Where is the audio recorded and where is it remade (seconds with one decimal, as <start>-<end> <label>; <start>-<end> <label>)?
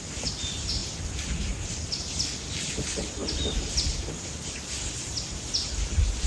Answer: 0.0-6.3 recorded